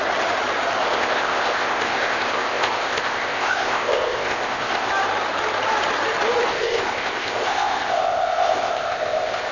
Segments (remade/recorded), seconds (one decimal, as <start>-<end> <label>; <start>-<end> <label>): 0.0-0.8 recorded; 0.8-4.9 remade; 4.9-6.5 recorded; 6.5-9.5 remade